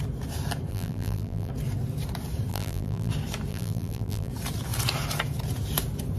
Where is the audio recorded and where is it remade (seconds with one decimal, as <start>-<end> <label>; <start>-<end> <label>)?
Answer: 0.0-0.7 recorded; 0.7-1.5 remade; 1.5-2.5 recorded; 2.5-3.1 remade; 3.1-3.5 recorded; 3.5-4.3 remade; 4.3-6.2 recorded